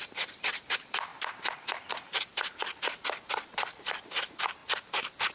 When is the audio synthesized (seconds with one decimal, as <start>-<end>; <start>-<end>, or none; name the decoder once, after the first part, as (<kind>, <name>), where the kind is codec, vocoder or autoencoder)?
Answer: 0.0-1.1 (vocoder, BigVGAN v2); 1.9-5.3